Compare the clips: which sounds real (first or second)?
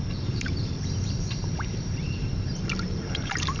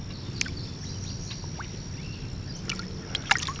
second